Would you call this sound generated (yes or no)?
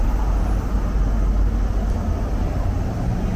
no